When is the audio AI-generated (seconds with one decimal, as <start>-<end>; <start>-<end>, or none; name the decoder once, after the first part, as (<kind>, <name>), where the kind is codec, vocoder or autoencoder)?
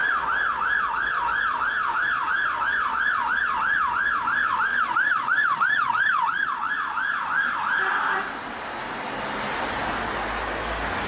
4.7-6.7 (vocoder, Vocos)